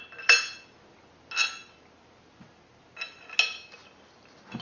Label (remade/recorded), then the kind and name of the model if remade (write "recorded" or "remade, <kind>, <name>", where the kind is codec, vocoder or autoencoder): recorded